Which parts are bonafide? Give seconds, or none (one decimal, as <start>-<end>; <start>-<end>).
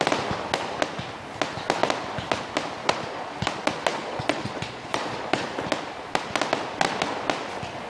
0.0-2.8; 3.4-3.9; 5.4-7.9